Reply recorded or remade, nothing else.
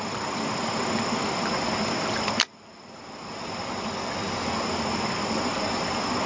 recorded